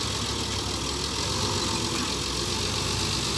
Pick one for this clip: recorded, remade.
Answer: recorded